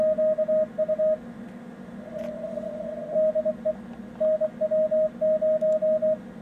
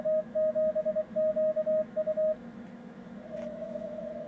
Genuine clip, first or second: first